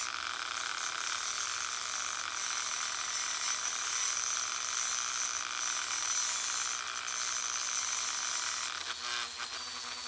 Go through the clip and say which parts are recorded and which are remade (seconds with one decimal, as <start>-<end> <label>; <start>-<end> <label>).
0.0-10.1 recorded